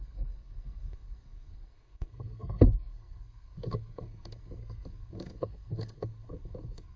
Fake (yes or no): yes